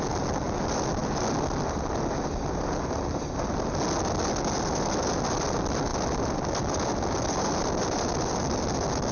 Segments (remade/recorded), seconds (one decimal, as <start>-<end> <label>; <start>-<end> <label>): 0.0-9.1 recorded